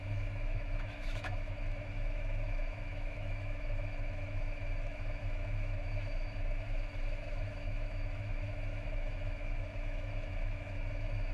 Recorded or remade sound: remade